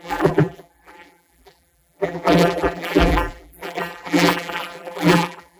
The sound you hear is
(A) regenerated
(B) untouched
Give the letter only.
A